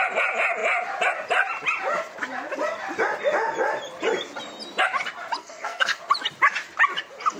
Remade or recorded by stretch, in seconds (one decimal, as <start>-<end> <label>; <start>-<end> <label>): 0.0-5.4 recorded; 5.4-6.0 remade; 6.0-7.4 recorded